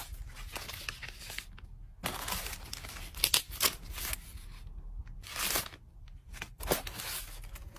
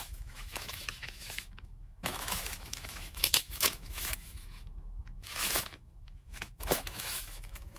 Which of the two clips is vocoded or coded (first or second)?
second